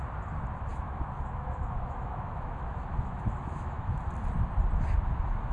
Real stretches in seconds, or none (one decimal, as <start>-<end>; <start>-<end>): 0.0-0.7; 4.0-5.5